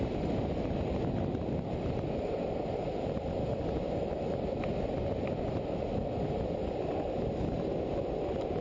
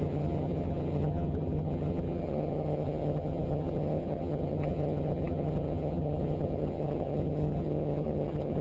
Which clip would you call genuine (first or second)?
first